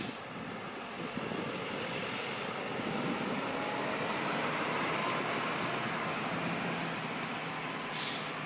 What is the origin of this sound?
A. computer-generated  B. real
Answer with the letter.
B